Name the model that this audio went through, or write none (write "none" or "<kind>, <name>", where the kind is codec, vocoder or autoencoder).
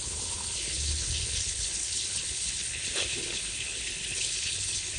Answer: codec, HILCodec